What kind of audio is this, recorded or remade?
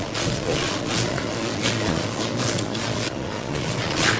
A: remade